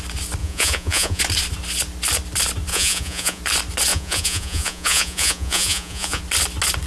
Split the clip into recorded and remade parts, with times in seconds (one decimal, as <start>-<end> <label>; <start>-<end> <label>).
0.0-0.4 recorded; 0.4-1.2 remade; 1.2-2.7 recorded; 2.7-3.4 remade; 3.4-3.9 recorded; 3.9-6.2 remade; 6.2-6.9 recorded